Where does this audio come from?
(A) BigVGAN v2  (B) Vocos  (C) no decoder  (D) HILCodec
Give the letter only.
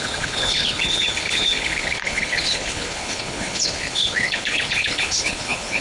D